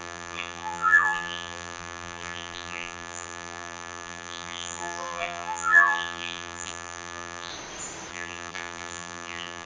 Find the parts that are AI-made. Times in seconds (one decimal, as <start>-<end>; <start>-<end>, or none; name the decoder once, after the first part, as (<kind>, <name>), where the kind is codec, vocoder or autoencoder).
0.0-7.5 (vocoder, BigVGAN v2); 8.1-9.7